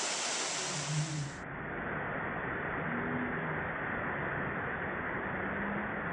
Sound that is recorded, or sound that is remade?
recorded